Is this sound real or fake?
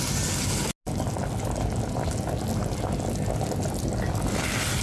real